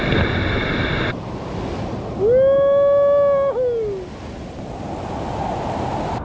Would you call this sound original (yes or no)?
yes